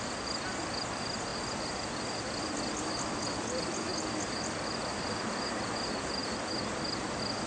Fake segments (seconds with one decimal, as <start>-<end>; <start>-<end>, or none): 0.0-7.5